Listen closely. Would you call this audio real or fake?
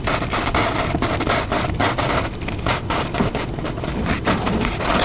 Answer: real